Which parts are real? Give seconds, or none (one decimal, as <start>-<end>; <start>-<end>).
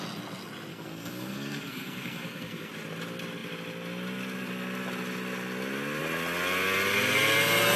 0.0-0.7; 2.7-7.8